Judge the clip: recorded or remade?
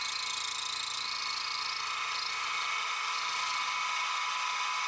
recorded